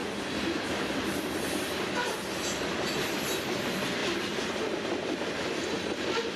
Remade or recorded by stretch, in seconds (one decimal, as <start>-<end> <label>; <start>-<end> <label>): 0.0-6.4 recorded